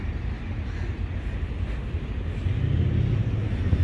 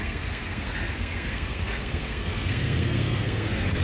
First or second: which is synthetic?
second